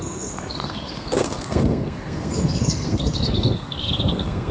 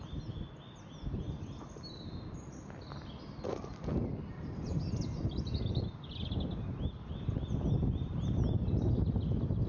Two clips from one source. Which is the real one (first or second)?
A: second